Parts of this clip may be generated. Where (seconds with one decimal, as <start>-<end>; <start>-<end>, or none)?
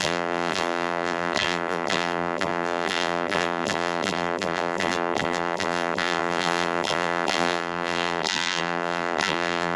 0.0-9.8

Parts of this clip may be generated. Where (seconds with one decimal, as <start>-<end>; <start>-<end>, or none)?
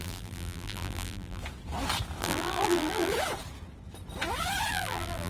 0.0-1.4; 2.2-3.1; 4.7-5.3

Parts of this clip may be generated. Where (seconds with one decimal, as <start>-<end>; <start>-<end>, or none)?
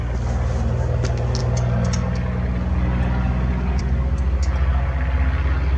none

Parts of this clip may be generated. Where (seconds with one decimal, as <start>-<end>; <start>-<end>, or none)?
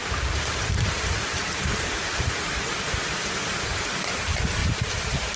0.0-5.4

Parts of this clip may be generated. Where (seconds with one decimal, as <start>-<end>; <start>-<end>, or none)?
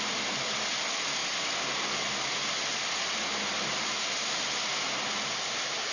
none